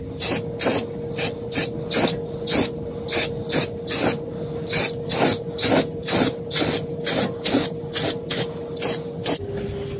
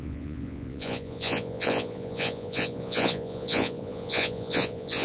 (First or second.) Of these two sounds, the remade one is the second